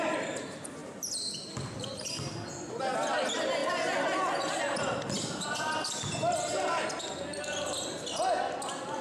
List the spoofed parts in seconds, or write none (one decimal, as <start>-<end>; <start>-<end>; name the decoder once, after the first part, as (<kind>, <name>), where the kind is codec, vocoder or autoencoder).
none